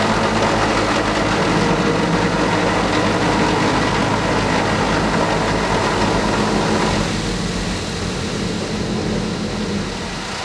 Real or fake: real